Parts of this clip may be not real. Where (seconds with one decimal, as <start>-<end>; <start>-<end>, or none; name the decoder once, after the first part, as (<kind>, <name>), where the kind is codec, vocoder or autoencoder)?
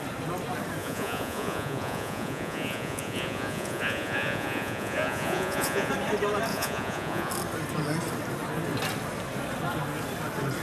0.8-5.9 (vocoder, Vocos); 6.5-7.3